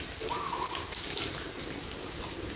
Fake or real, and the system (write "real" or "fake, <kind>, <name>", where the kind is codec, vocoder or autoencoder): real